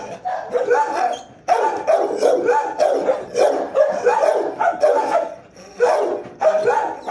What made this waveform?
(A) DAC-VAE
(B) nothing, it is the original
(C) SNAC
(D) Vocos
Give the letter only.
B